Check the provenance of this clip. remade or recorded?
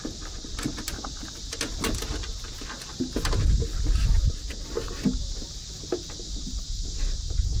recorded